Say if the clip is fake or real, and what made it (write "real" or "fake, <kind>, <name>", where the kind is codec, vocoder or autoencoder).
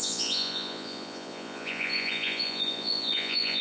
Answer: fake, vocoder, Vocos